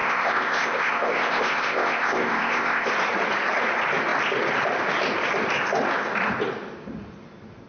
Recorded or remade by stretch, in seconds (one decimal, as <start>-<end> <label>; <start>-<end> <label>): 0.0-2.9 remade; 2.9-7.7 recorded